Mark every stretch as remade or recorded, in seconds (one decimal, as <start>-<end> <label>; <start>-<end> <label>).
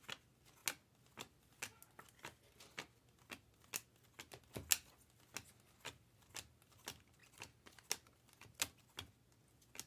0.0-7.2 recorded; 7.2-7.9 remade; 7.9-9.9 recorded